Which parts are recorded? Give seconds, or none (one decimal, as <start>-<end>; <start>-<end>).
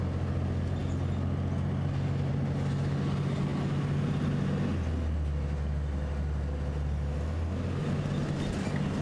0.0-9.0